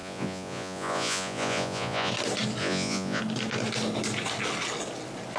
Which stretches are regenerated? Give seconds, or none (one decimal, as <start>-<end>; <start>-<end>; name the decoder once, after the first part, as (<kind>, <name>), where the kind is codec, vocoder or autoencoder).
0.0-2.1 (vocoder, Vocos); 2.6-3.2